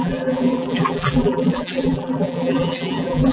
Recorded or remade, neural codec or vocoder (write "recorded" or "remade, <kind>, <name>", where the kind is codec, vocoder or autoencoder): remade, vocoder, BigVGAN v2